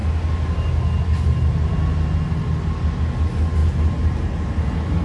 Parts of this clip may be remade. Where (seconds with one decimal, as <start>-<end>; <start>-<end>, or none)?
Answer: none